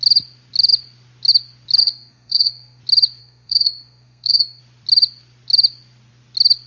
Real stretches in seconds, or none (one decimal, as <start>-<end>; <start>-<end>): 0.0-1.8; 2.8-3.2; 4.6-6.7